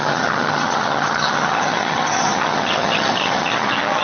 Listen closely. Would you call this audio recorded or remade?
remade